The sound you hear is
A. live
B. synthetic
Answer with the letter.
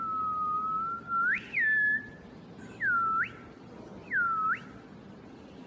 A